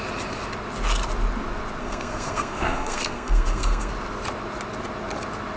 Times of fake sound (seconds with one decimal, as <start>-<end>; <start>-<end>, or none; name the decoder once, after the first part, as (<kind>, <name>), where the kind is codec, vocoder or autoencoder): 1.8-3.9 (codec, SNAC)